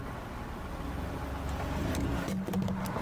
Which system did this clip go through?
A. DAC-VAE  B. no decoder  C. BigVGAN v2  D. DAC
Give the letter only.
B